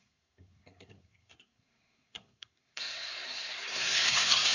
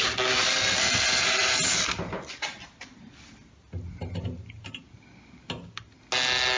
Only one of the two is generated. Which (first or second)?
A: first